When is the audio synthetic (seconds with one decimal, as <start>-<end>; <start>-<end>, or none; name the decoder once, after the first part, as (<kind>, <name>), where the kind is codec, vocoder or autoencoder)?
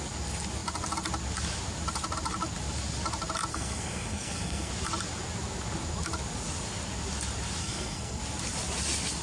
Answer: 3.5-4.7 (codec, SNAC); 7.6-8.2